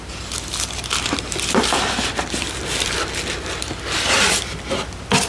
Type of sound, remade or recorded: recorded